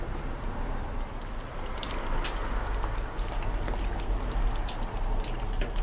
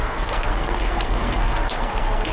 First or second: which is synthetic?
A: second